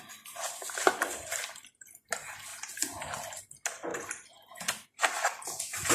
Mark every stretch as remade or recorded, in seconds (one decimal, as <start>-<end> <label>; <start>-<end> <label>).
0.0-5.9 recorded